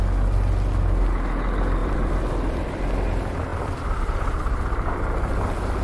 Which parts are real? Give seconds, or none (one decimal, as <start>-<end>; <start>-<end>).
0.0-1.8; 2.8-3.5; 5.0-5.8